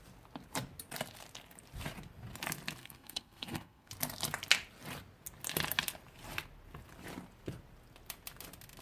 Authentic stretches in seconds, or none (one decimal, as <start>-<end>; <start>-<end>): 0.0-2.8; 3.9-8.8